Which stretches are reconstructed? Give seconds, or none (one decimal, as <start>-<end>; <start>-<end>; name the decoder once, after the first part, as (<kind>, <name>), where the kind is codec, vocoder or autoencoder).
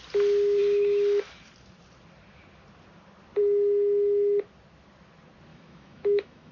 5.5-6.5 (autoencoder, DAC-VAE)